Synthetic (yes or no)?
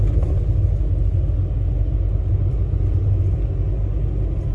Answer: no